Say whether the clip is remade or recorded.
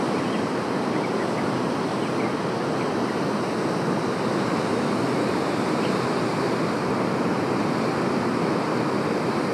recorded